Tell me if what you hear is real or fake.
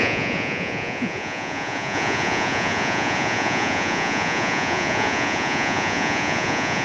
fake